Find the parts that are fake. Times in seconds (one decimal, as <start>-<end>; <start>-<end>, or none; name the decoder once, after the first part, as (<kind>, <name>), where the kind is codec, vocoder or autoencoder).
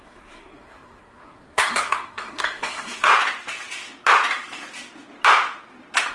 0.0-3.1 (codec, SNAC)